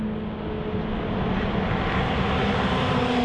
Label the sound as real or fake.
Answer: real